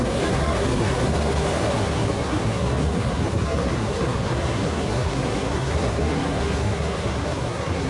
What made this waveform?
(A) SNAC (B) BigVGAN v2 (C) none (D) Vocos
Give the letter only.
A